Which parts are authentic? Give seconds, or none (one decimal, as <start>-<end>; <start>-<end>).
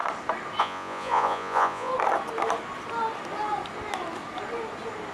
0.0-0.6; 1.9-5.1